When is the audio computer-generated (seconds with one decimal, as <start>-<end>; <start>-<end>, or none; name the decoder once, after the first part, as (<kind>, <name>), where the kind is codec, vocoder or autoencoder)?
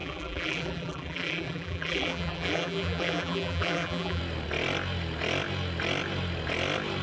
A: 0.0-4.2 (vocoder, BigVGAN v2)